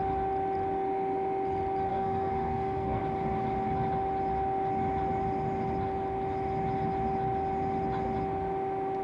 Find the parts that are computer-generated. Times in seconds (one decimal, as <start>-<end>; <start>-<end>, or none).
1.9-3.0